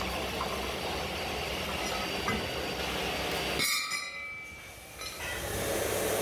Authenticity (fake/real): real